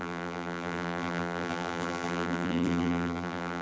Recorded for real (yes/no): no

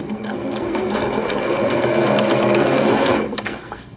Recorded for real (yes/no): no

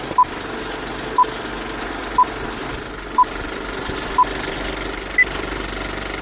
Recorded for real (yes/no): yes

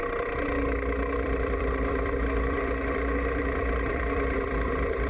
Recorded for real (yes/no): no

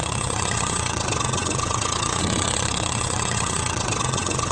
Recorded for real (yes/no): no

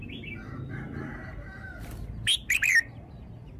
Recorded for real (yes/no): yes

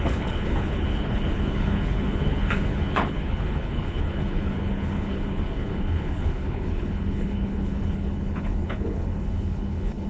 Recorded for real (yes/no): no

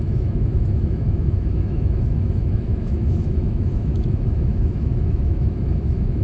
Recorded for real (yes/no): no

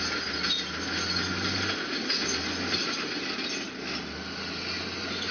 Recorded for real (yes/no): yes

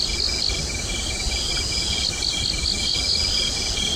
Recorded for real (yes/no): yes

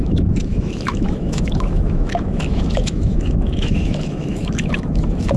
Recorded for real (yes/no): no